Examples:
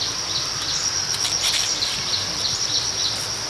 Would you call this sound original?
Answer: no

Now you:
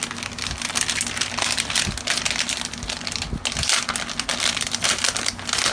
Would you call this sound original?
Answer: yes